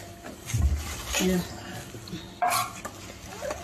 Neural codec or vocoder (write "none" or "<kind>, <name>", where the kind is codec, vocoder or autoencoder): none